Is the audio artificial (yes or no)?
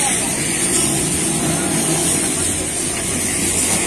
yes